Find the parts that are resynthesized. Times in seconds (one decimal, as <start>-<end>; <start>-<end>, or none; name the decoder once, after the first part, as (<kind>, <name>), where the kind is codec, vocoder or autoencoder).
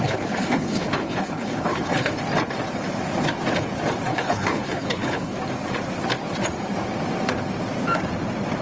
0.0-2.1 (codec, HILCodec); 4.1-5.4